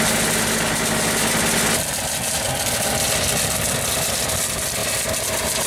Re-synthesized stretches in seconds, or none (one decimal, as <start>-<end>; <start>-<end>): none